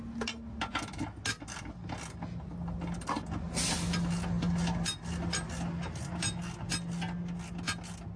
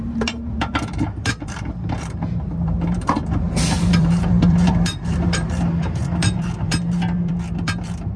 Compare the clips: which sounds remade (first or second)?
second